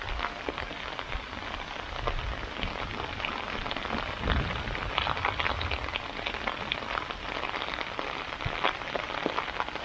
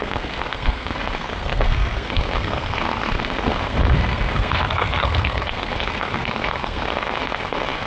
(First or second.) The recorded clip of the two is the first